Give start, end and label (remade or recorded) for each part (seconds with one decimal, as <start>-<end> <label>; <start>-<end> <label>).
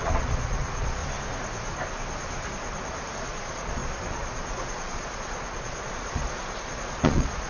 0.0-1.0 remade; 1.0-3.2 recorded; 3.2-7.5 remade